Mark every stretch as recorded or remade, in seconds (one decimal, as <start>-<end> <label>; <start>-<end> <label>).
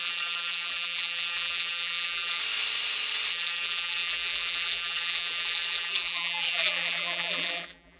0.0-2.4 remade; 2.4-3.3 recorded; 3.3-8.0 remade